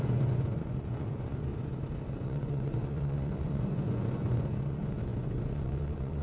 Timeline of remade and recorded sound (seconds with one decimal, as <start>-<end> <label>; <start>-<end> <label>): 0.0-1.5 remade; 1.5-2.1 recorded; 2.1-6.2 remade